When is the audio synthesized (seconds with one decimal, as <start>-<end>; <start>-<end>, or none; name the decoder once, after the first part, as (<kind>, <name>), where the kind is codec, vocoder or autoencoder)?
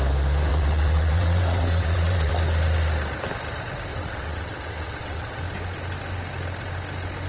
0.5-2.3 (vocoder, WaveNeXt); 3.9-5.4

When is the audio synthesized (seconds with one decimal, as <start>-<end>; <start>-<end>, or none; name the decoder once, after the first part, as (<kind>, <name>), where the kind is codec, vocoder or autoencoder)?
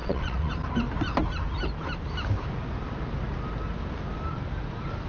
0.0-0.5 (vocoder, WaveNeXt)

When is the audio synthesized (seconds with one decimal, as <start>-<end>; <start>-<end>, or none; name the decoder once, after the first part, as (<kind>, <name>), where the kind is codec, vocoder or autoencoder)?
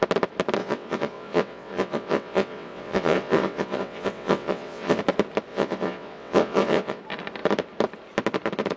0.6-5.0 (vocoder, WaveNeXt); 5.5-7.0